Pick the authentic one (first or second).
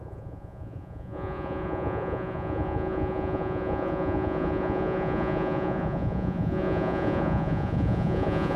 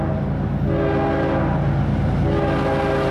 second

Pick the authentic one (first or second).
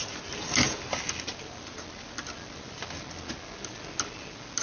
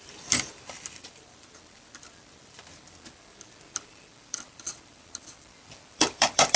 first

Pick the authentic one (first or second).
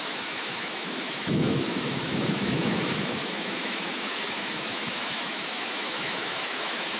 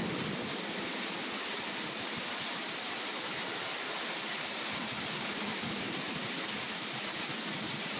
second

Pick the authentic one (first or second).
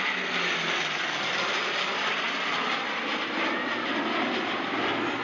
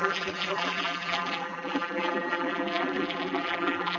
first